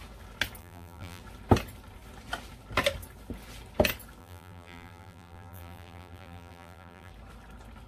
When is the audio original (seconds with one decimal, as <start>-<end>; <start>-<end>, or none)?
0.0-0.6; 1.2-4.2; 7.1-7.9